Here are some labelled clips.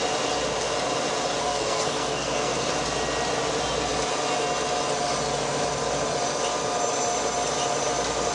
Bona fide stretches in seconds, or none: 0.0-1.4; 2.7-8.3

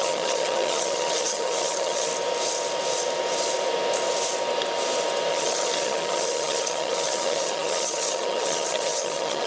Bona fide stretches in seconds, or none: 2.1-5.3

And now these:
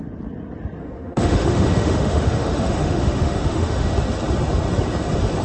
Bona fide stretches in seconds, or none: 0.0-0.8; 4.0-5.4

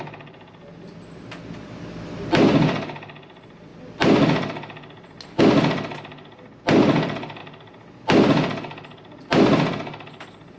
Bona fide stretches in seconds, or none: 0.0-10.6